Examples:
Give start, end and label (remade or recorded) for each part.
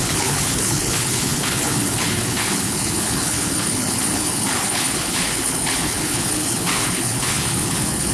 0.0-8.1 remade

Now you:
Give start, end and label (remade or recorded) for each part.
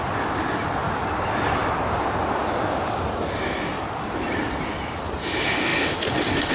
0.0-6.5 recorded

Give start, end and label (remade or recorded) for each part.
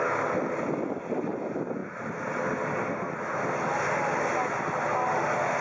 0.0-5.6 recorded